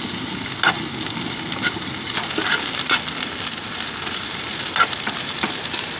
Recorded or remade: remade